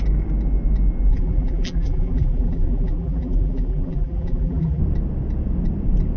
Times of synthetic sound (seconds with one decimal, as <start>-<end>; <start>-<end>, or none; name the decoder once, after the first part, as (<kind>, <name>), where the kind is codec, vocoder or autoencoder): 1.1-4.8 (vocoder, BigVGAN v2)